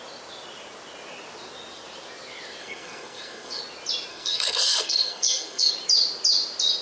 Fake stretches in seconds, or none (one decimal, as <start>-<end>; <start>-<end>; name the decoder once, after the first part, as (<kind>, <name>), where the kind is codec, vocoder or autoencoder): 2.6-3.6 (codec, SNAC); 4.1-5.7